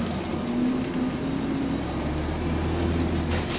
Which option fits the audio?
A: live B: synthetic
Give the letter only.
A